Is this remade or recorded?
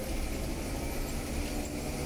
recorded